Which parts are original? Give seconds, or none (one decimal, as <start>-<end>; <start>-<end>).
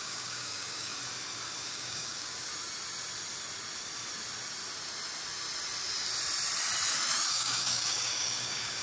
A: 0.9-1.7; 2.5-7.3